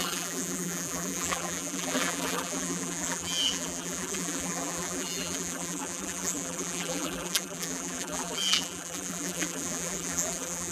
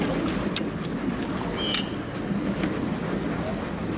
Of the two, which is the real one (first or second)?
second